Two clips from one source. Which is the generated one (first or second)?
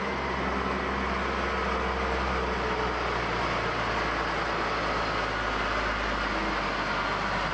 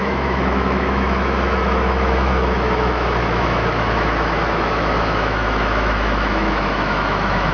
second